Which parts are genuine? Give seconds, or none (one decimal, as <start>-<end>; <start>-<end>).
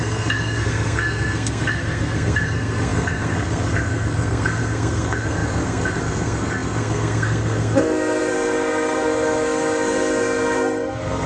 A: none